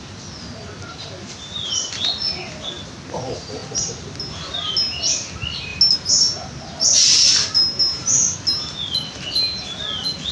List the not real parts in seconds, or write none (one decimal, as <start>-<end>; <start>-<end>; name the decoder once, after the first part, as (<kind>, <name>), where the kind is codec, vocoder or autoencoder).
0.9-1.9 (vocoder, BigVGAN v2)